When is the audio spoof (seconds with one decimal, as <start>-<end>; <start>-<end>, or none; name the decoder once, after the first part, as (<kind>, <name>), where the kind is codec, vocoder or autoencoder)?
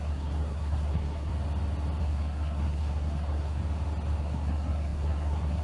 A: 0.0-1.3 (codec, SNAC); 2.0-3.6; 4.2-5.6